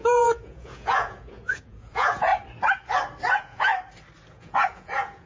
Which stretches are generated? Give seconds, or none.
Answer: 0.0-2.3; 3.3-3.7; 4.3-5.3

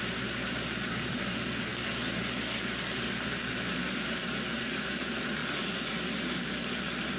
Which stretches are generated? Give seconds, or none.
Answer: none

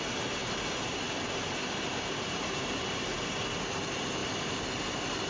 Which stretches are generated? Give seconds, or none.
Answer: 0.4-3.6; 4.2-5.3

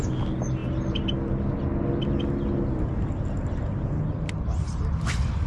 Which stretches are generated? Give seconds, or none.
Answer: none

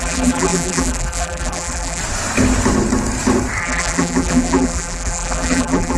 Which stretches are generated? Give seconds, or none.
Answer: 0.0-2.0; 3.6-6.0

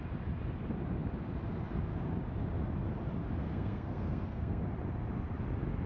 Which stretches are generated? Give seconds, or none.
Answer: 3.4-4.6